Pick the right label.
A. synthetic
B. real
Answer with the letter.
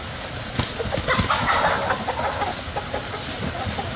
B